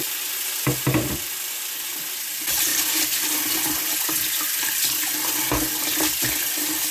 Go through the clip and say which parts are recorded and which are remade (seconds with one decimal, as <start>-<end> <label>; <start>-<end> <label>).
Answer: 0.0-6.9 recorded